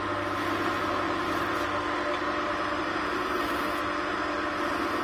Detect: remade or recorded recorded